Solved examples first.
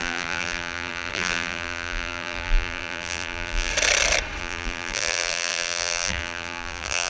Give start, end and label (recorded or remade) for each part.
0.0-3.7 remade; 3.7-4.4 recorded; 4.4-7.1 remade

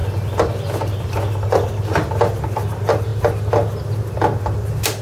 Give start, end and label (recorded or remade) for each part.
0.0-5.0 recorded

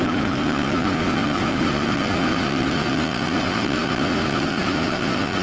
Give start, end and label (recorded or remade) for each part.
0.0-5.4 remade

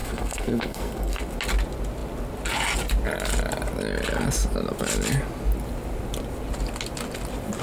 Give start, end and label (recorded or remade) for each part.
0.0-1.2 remade; 1.2-7.6 recorded

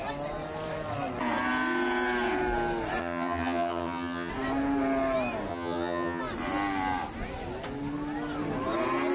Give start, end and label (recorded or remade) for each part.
0.0-3.0 recorded; 3.0-4.3 remade; 4.3-5.5 recorded; 5.5-6.2 remade; 6.2-9.1 recorded

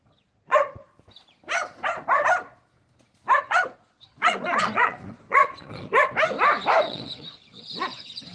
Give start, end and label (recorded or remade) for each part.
0.0-0.9 remade; 0.9-3.4 recorded; 3.4-5.9 remade; 5.9-6.8 recorded; 6.8-8.3 remade